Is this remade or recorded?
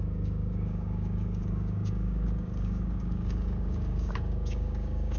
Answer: remade